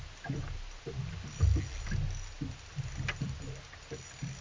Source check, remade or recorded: recorded